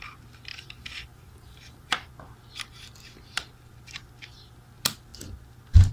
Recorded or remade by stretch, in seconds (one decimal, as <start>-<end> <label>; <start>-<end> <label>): 0.0-0.5 recorded; 0.5-2.1 remade; 2.1-5.9 recorded